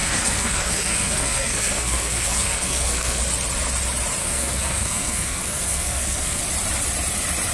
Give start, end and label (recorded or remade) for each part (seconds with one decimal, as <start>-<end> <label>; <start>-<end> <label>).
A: 0.0-3.2 remade; 3.2-4.2 recorded; 4.2-6.4 remade; 6.4-7.5 recorded